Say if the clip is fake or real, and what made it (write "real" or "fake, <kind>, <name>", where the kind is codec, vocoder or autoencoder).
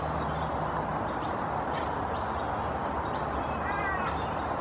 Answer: real